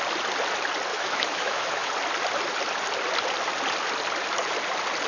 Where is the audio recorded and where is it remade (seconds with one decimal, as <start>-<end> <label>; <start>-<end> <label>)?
0.0-0.9 recorded; 0.9-1.9 remade; 1.9-5.1 recorded